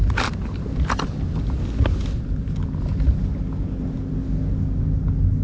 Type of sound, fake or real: real